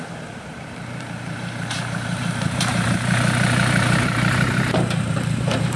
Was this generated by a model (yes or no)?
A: yes